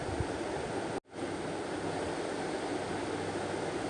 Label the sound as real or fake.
real